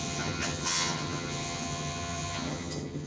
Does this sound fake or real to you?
fake